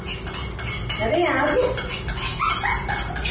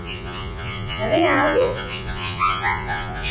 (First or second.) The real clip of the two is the first